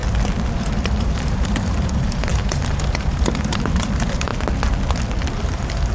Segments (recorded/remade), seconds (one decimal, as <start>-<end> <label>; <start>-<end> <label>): 0.0-0.5 recorded; 0.5-4.3 remade; 4.3-5.3 recorded; 5.3-5.9 remade